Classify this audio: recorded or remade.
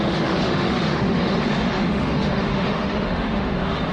remade